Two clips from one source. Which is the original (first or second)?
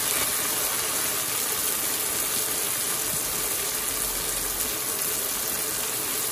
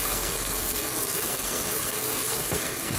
first